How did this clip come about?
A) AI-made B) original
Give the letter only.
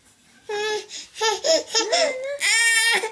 B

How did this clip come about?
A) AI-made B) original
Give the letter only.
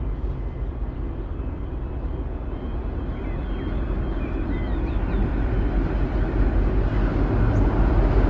B